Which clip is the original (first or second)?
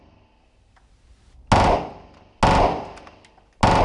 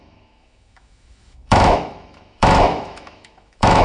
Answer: first